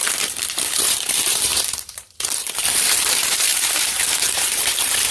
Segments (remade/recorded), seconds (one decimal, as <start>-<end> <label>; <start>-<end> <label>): 0.0-5.1 remade